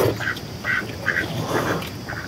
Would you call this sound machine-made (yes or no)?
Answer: no